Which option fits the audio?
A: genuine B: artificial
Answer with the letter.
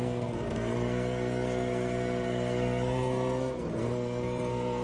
B